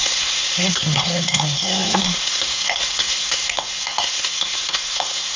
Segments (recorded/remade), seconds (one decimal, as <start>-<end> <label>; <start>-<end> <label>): 0.0-5.4 remade